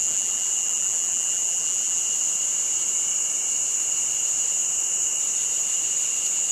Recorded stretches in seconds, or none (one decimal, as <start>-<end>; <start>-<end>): 2.0-6.5